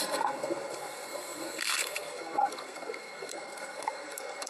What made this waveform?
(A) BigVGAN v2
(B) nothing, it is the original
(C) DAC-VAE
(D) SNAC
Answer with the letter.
D